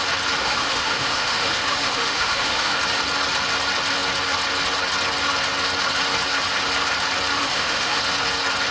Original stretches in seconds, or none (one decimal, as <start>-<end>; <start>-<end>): 0.0-0.4; 2.8-7.4; 8.0-8.7